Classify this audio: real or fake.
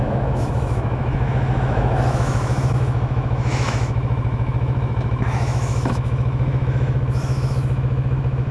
fake